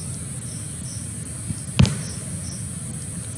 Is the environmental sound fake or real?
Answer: real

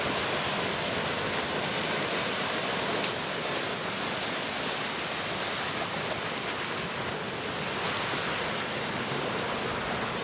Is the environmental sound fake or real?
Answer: real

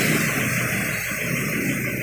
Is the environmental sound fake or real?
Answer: real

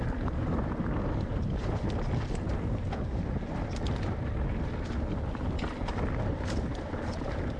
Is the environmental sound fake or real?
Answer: real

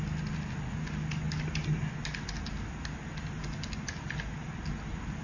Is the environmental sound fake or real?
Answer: real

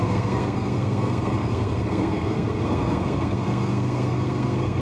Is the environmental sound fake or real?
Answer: fake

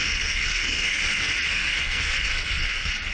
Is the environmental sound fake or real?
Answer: fake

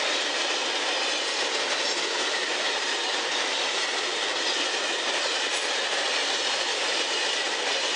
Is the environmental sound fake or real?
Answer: real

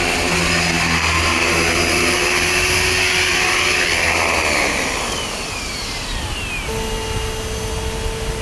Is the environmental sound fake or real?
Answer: fake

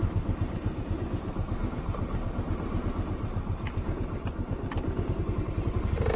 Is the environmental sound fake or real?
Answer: real